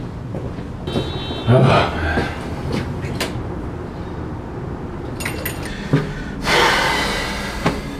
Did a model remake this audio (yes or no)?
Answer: no